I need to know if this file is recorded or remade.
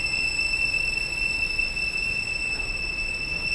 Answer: recorded